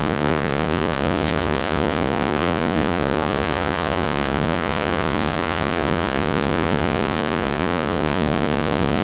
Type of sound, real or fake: fake